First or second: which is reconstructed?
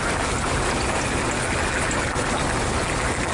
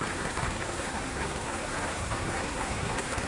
second